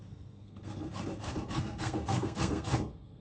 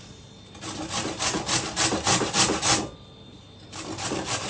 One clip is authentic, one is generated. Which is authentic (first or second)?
second